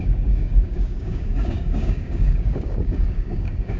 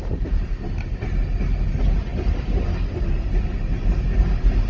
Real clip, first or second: second